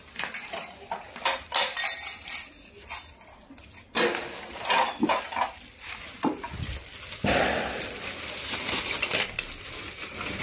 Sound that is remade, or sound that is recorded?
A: recorded